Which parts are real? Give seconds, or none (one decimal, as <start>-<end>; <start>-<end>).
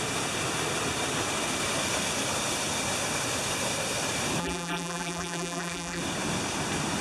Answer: 0.0-4.4; 6.0-7.0